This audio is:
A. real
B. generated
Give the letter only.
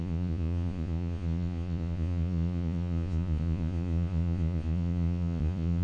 B